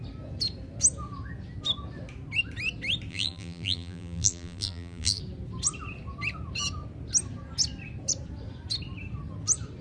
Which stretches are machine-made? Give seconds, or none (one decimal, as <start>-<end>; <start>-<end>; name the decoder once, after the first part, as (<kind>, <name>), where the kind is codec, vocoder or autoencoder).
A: 3.1-5.2 (vocoder, BigVGAN v2)